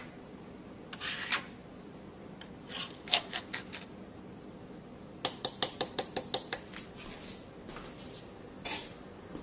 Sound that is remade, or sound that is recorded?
recorded